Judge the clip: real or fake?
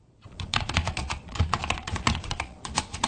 fake